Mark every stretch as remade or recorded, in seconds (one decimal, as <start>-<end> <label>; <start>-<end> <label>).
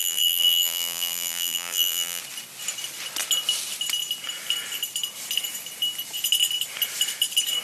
0.0-2.2 remade; 2.2-7.6 recorded